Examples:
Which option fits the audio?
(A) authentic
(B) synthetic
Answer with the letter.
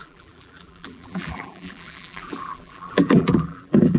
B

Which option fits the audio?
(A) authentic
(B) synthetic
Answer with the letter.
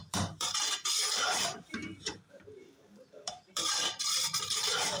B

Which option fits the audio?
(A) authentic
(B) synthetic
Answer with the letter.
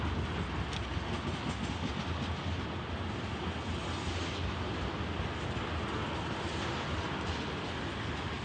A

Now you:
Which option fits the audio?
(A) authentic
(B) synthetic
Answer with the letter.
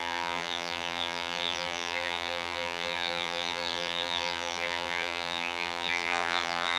B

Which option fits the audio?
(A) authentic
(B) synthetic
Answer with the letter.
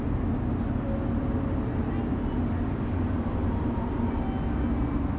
A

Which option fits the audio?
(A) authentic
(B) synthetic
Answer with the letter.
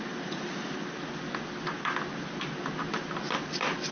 A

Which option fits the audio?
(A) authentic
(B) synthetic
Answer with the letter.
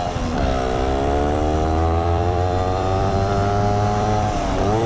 B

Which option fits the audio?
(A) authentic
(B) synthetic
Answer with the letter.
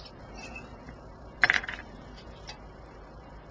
B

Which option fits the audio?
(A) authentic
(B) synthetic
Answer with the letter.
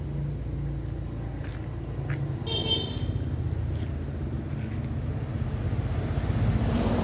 A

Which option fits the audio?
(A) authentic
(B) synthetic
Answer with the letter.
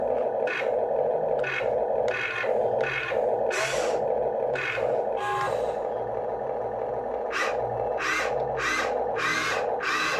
A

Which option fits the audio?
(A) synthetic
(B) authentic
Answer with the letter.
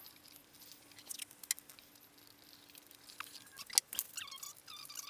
B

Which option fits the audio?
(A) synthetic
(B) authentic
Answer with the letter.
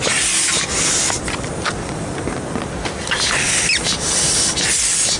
B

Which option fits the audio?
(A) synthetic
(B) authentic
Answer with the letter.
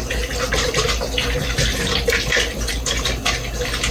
B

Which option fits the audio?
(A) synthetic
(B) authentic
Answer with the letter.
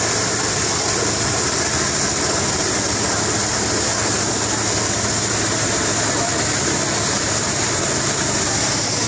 B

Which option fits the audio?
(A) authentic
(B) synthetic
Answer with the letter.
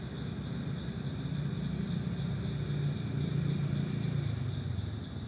A